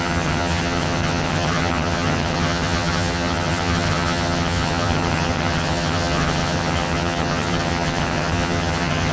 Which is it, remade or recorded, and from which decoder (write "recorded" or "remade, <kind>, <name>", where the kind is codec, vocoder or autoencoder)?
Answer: remade, vocoder, HiFi-GAN